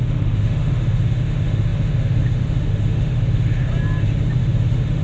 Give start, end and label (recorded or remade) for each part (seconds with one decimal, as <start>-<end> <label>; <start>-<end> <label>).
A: 0.0-3.7 remade; 3.7-4.4 recorded; 4.4-5.0 remade